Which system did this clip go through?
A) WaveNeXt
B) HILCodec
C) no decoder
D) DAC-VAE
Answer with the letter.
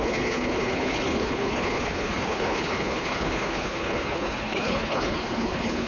B